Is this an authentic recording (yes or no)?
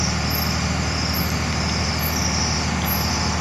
yes